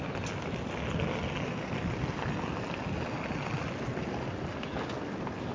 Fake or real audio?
real